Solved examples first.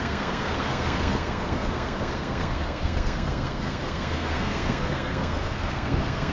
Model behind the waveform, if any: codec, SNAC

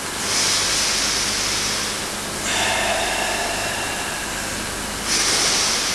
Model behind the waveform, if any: none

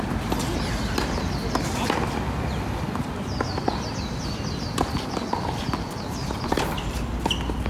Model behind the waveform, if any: none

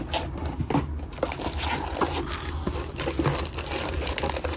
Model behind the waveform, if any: none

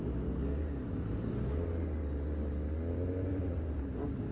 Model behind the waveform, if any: none